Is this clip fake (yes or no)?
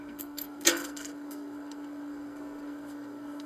yes